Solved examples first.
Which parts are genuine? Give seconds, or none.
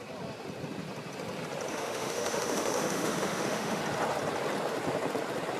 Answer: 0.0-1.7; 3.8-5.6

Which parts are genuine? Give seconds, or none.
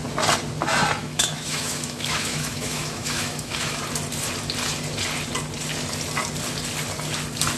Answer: 0.0-1.0; 3.8-7.6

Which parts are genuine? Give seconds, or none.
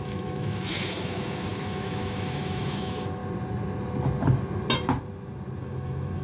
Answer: 3.2-5.6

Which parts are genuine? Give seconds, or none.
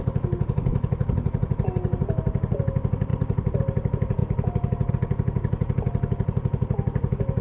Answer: 0.0-7.4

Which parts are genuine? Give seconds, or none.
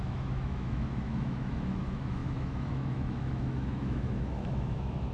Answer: none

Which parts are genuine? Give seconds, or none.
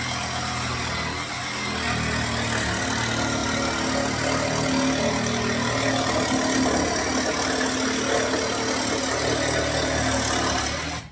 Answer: 0.0-11.1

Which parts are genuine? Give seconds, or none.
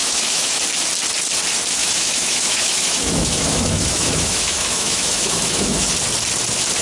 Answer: 0.6-1.8; 5.9-6.8